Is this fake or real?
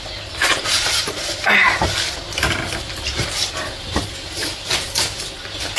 real